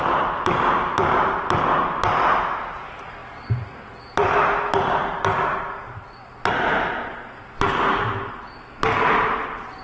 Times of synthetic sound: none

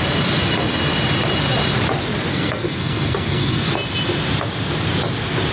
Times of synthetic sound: 2.3-3.7

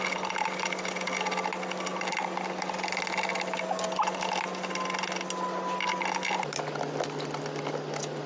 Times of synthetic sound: none

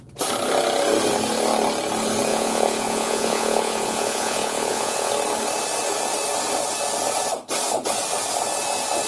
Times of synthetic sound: 2.3-5.1

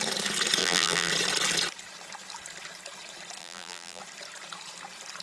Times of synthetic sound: 0.6-1.1; 3.4-4.0

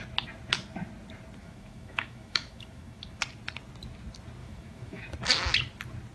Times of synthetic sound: 1.4-3.2; 4.4-5.0

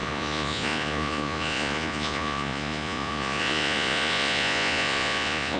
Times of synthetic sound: 0.0-5.6